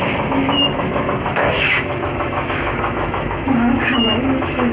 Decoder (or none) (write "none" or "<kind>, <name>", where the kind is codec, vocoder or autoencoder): autoencoder, DAC-VAE